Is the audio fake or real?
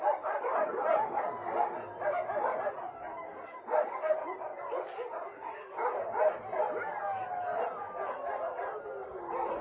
real